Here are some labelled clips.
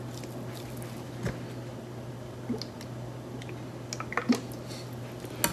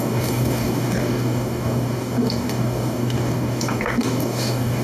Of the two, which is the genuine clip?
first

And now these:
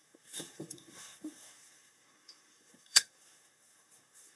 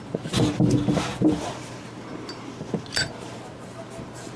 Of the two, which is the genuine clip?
second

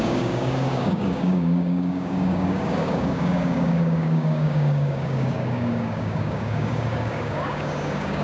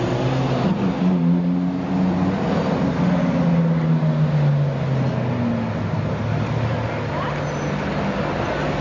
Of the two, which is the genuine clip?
second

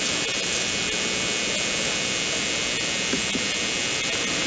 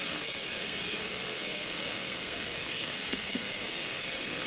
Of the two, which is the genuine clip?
first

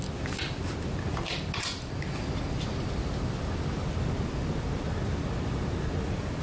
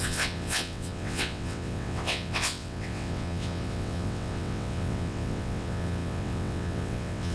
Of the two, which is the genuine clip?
first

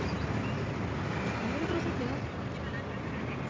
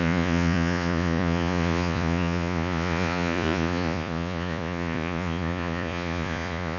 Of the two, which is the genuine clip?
first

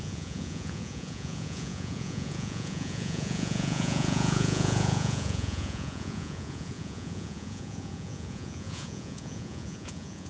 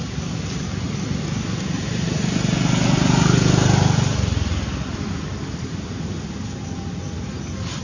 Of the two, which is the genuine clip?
second